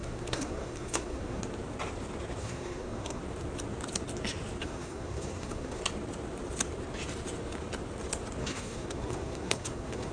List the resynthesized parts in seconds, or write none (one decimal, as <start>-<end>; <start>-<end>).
0.0-1.4; 2.4-3.2; 4.6-5.8; 8.4-10.1